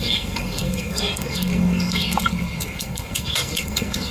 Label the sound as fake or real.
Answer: fake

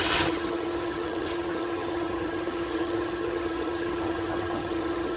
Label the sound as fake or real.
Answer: fake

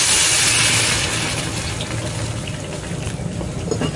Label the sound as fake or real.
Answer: real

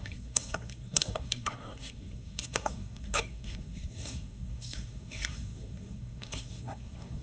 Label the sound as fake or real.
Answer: fake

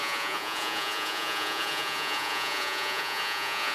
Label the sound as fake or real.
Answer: fake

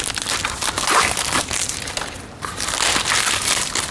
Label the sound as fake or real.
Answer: real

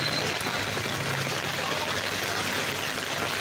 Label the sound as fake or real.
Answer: real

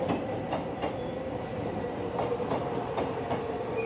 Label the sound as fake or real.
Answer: fake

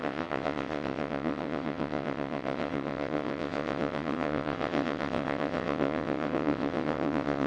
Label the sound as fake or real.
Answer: fake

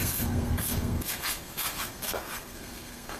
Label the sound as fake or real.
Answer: fake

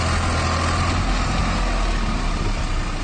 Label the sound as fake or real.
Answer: real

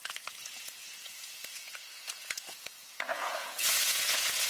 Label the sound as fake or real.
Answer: fake